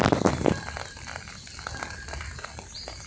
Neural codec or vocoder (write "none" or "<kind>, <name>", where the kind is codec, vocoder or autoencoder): none